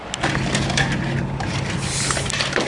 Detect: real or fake real